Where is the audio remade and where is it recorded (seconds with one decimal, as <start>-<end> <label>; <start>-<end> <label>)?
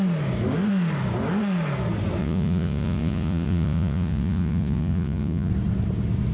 0.0-2.2 recorded; 2.2-5.5 remade; 5.5-6.3 recorded